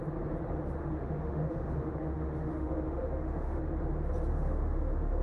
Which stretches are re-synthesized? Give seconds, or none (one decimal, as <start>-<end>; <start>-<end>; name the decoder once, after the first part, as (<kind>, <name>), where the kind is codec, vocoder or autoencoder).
0.8-3.6 (autoencoder, DAC-VAE); 4.3-5.2